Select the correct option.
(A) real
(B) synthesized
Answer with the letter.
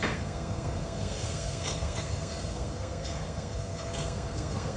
B